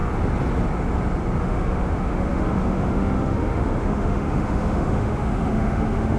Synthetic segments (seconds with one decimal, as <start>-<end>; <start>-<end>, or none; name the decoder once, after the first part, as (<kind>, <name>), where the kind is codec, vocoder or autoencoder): 1.4-6.2 (autoencoder, DAC-VAE)